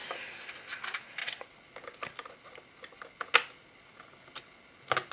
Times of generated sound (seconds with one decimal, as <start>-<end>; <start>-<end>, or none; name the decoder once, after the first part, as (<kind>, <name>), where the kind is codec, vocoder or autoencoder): none